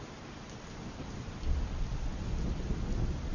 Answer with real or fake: real